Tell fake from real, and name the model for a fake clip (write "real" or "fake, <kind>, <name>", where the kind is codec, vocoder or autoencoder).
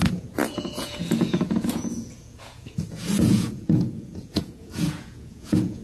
fake, vocoder, Vocos